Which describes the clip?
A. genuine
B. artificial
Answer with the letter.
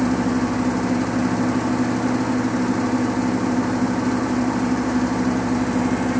A